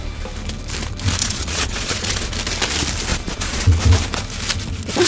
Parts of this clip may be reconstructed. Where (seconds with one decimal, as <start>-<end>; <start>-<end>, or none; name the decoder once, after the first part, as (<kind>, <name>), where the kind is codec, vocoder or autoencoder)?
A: 1.2-2.3 (vocoder, Vocos); 3.1-3.8